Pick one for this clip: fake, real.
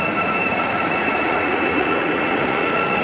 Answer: fake